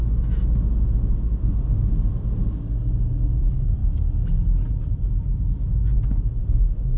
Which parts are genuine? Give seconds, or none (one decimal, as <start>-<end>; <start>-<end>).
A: 0.0-1.4; 1.9-6.4